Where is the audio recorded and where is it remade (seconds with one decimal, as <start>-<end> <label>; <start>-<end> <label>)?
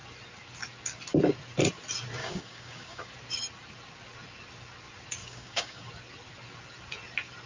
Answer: 0.0-2.2 recorded; 2.2-3.1 remade; 3.1-5.2 recorded; 5.2-5.9 remade; 5.9-7.5 recorded